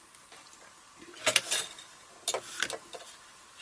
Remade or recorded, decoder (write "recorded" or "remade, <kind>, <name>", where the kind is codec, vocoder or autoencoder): recorded